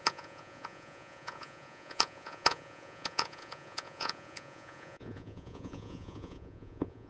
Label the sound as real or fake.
fake